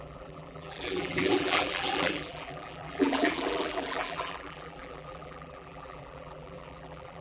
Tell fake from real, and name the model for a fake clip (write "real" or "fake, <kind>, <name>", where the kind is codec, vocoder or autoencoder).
fake, vocoder, BigVGAN v2